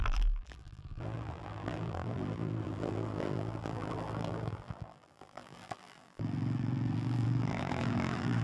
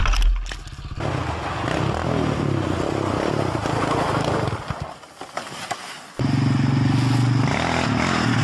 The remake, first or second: first